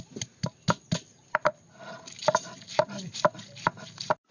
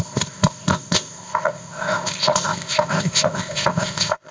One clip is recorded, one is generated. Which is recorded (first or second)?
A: first